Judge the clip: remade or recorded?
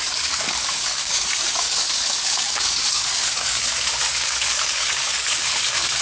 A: remade